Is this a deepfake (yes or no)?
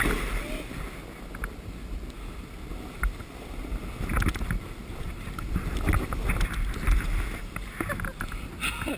no